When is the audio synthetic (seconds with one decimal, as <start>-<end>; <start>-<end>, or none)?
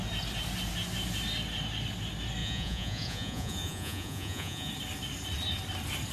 2.4-4.7